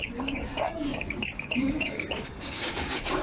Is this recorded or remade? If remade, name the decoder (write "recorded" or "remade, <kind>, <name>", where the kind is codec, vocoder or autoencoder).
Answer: remade, codec, DAC